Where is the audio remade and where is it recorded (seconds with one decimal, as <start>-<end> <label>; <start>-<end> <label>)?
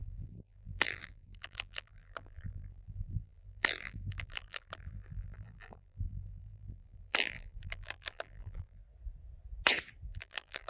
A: 0.0-8.8 remade; 8.8-10.1 recorded; 10.1-10.7 remade